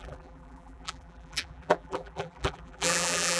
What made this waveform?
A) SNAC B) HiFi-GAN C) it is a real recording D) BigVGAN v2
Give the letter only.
D